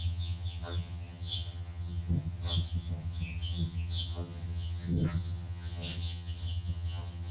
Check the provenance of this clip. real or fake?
fake